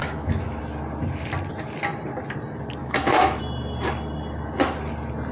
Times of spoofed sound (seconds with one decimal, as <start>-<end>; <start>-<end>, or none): 0.0-0.6; 2.8-3.4